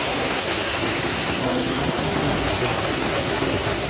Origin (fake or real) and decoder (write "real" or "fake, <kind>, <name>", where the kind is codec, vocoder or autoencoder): fake, codec, SNAC